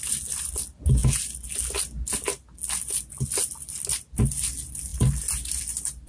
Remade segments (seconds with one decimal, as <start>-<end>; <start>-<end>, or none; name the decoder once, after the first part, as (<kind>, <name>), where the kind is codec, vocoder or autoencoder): none